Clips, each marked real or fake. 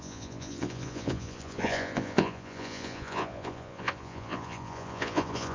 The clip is fake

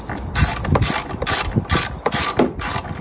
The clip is real